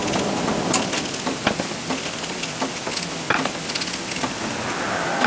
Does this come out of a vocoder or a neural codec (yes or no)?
no